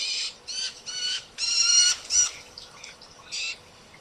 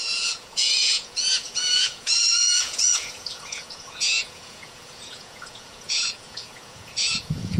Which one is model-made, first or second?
second